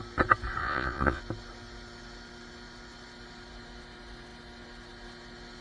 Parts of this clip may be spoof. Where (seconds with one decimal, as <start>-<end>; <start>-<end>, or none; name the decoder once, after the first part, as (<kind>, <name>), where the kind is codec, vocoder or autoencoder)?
0.6-1.2 (vocoder, Vocos)